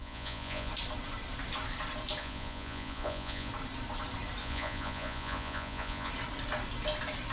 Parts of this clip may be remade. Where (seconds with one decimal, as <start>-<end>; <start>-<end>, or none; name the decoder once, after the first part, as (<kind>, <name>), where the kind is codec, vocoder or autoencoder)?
0.0-0.7 (vocoder, Vocos); 2.2-3.5; 4.4-6.1